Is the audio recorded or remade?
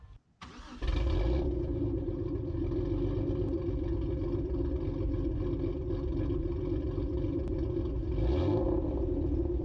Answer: recorded